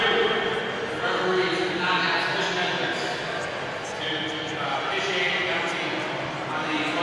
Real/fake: real